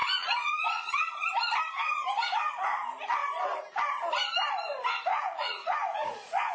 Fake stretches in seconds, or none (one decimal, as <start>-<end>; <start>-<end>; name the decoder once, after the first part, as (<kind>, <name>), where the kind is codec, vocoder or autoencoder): 0.0-0.9 (vocoder, Vocos); 5.1-6.5